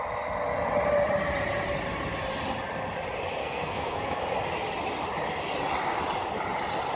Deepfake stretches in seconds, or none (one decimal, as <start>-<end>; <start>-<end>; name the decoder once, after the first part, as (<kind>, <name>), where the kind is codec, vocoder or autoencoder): 3.4-4.2 (codec, SNAC)